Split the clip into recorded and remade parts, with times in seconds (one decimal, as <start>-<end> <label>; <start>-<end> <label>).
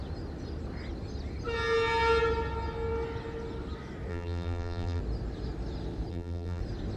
0.0-4.1 recorded; 4.1-5.0 remade; 5.0-6.1 recorded; 6.1-6.6 remade; 6.6-7.0 recorded